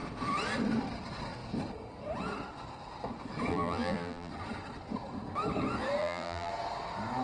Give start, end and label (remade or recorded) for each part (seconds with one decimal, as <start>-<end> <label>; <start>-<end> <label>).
0.0-3.5 recorded; 3.5-4.3 remade; 4.3-6.0 recorded; 6.0-6.5 remade; 6.5-7.2 recorded